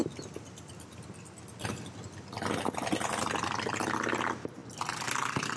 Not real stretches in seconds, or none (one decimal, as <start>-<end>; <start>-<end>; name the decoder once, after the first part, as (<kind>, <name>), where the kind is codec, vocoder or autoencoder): none